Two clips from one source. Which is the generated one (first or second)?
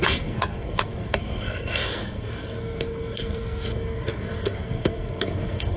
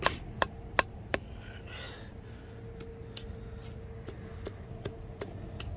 first